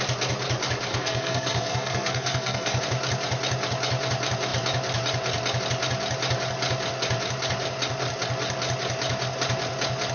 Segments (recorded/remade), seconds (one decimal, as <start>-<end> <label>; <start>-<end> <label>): 0.0-0.9 recorded; 0.9-2.8 remade; 2.8-10.1 recorded